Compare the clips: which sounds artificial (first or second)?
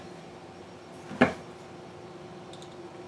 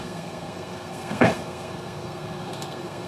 second